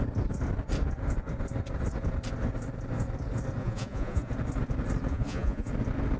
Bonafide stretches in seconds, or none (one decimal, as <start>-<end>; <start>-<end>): 0.0-3.6; 4.3-5.1; 5.7-6.2